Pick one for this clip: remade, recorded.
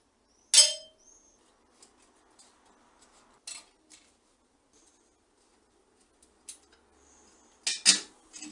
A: recorded